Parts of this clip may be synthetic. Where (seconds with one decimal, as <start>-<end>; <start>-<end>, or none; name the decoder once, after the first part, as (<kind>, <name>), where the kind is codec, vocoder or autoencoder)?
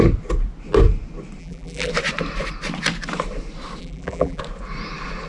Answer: 1.4-1.9 (vocoder, BigVGAN v2); 3.8-4.4